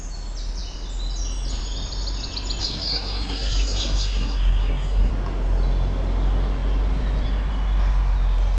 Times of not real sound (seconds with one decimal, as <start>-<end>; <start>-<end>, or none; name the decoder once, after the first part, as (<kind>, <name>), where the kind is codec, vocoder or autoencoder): 2.6-5.1 (codec, SNAC)